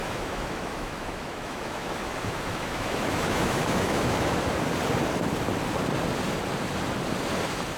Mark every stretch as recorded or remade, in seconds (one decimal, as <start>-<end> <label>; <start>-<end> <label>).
0.0-4.4 remade; 4.4-7.8 recorded